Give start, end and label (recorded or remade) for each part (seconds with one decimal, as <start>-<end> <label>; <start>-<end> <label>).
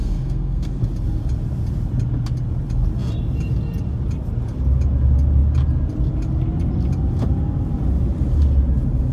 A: 0.0-0.7 remade; 0.7-9.1 recorded